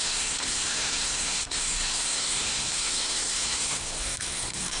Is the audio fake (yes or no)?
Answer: yes